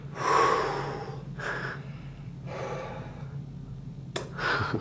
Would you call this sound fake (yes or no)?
no